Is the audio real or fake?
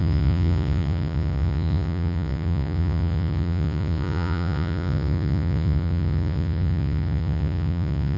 fake